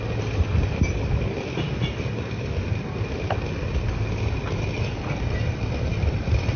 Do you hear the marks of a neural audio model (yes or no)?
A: no